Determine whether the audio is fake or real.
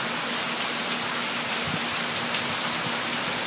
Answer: real